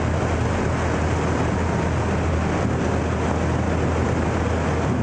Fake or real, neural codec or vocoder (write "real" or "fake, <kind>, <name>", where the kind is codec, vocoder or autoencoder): real